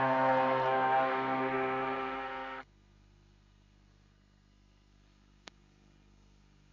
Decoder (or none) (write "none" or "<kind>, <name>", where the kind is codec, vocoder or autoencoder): codec, SNAC